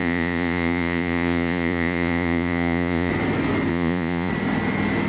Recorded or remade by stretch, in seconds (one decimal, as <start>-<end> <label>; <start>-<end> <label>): 0.0-3.1 remade; 3.1-3.7 recorded; 3.7-4.3 remade; 4.3-5.1 recorded